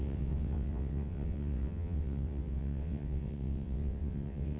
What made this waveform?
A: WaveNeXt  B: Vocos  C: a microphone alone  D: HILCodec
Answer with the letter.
A